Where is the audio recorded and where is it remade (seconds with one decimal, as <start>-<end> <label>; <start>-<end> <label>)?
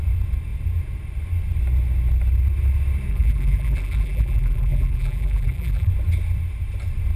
0.0-3.1 recorded; 3.1-5.9 remade; 5.9-7.2 recorded